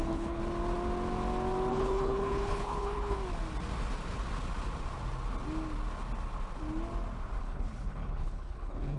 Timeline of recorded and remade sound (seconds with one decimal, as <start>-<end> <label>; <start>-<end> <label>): 0.0-0.4 remade; 0.4-1.7 recorded; 1.7-3.2 remade; 3.2-7.4 recorded; 7.4-9.0 remade